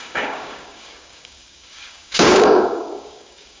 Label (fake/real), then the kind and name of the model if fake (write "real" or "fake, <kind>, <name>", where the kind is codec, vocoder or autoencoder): fake, codec, DAC